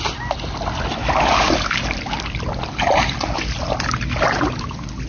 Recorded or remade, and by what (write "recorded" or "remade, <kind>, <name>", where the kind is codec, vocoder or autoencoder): recorded